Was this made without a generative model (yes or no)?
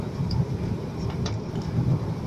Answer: yes